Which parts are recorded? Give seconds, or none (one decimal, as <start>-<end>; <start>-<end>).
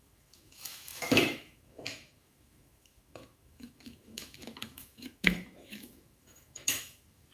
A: none